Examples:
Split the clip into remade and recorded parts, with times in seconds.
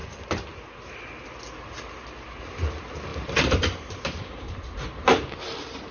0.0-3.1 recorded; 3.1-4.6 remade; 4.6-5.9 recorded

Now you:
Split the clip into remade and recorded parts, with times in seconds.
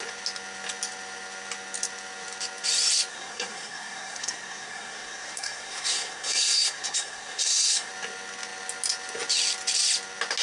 0.0-3.1 recorded; 3.1-7.9 remade; 7.9-10.4 recorded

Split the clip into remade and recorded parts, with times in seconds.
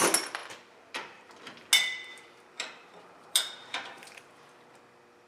0.0-0.4 recorded; 0.4-1.4 remade; 1.4-2.1 recorded; 2.1-4.4 remade; 4.4-5.3 recorded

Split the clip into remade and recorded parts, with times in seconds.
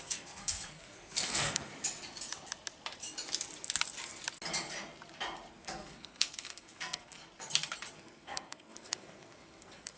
0.0-1.7 remade; 1.7-5.5 recorded; 5.5-7.2 remade; 7.2-7.9 recorded; 7.9-10.0 remade